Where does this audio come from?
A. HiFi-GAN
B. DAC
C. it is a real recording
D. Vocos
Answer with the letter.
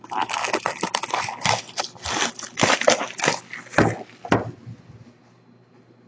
C